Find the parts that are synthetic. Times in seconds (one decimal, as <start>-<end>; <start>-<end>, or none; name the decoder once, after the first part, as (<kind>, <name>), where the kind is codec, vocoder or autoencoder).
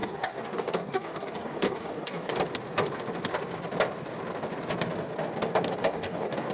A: 0.0-2.3 (codec, DAC); 5.8-6.5